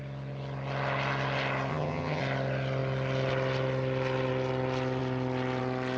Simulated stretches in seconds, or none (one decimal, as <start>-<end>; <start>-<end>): 1.7-2.2